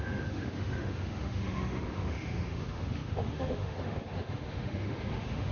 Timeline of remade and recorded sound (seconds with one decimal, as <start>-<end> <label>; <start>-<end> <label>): 0.0-5.5 remade